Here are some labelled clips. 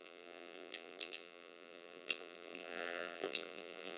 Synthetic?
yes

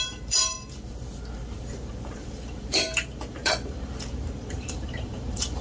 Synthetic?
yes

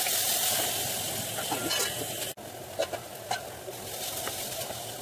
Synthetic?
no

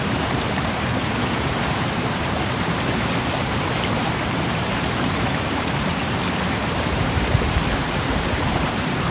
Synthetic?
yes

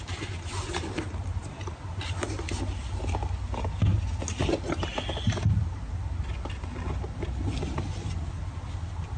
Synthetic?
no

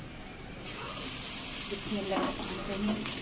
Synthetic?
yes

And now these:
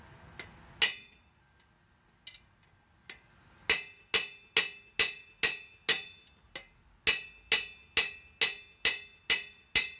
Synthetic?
no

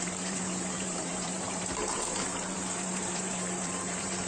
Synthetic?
yes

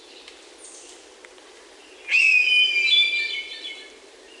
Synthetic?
no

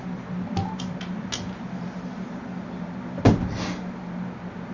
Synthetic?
no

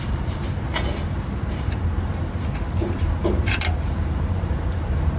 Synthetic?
yes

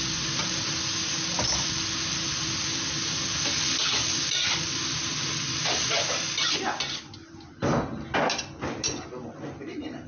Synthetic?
no